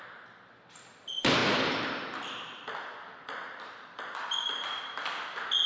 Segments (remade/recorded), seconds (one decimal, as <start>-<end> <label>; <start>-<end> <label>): 0.0-1.4 recorded; 1.4-4.8 remade; 4.8-5.7 recorded

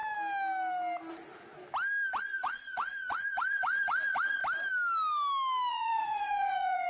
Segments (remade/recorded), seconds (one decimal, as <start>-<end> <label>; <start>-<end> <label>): 0.0-1.1 recorded; 1.1-1.5 remade; 1.5-2.2 recorded; 2.2-4.4 remade; 4.4-5.7 recorded; 5.7-6.9 remade

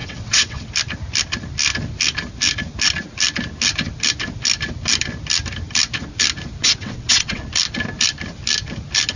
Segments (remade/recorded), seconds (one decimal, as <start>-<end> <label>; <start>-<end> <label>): 0.0-0.7 remade; 0.7-6.6 recorded; 6.6-7.4 remade; 7.4-9.2 recorded

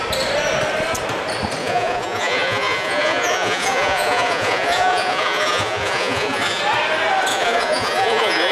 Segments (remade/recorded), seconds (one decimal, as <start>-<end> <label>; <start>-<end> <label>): 0.0-1.6 recorded; 1.6-6.6 remade; 6.6-7.3 recorded; 7.3-8.5 remade

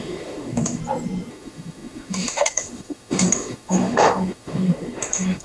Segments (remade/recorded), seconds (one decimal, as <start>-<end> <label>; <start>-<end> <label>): 0.0-0.8 remade; 0.8-1.3 recorded; 1.3-5.4 remade